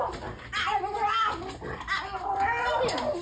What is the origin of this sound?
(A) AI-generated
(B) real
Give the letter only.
B